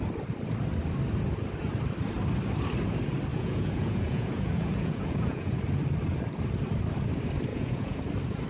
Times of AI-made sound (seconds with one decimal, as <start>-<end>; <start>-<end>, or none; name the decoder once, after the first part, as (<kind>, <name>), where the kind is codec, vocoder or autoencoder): 3.3-5.6 (vocoder, Vocos); 7.5-8.0